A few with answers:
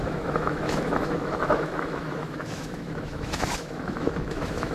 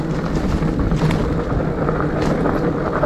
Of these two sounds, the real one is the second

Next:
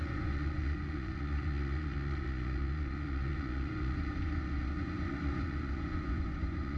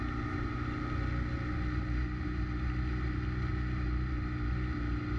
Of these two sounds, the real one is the second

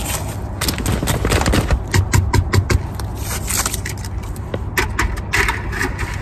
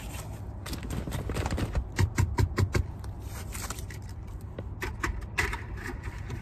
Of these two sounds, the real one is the first